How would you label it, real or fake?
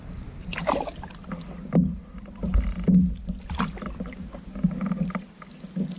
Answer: real